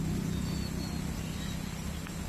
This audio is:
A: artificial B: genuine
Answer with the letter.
B